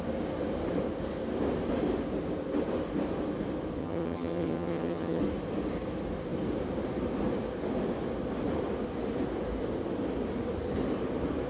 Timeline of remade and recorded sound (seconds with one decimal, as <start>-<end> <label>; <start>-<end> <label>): 0.0-3.8 recorded; 3.8-5.2 remade; 5.2-11.5 recorded

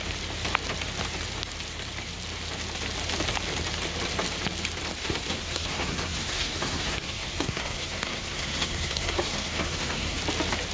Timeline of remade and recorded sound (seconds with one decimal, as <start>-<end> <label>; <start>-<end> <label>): 0.0-5.0 recorded; 5.0-10.2 remade; 10.2-10.7 recorded

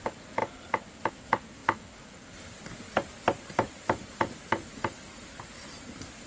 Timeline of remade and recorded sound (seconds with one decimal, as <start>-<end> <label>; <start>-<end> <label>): 0.0-6.3 recorded